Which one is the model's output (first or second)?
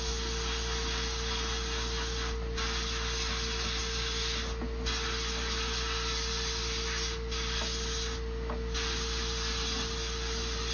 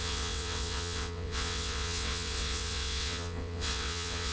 second